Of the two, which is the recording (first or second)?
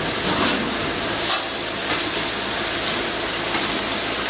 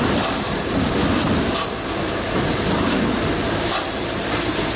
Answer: first